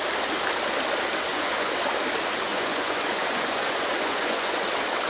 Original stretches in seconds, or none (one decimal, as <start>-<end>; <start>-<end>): 0.0-1.3; 1.8-2.5; 4.5-5.1